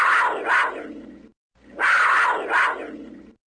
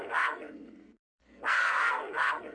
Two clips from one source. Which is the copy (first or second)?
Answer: second